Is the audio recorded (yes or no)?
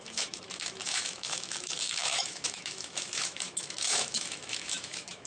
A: no